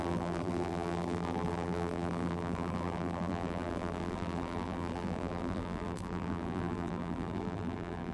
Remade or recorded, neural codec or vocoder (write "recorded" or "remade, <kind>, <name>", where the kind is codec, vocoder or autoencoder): remade, vocoder, BigVGAN v2